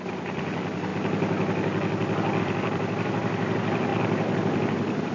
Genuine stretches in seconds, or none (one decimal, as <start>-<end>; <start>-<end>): 0.9-2.4